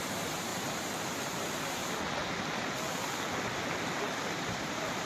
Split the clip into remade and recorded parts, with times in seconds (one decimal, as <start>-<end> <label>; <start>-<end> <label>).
0.0-0.5 remade; 0.5-1.1 recorded; 1.1-1.8 remade; 1.8-4.5 recorded; 4.5-5.1 remade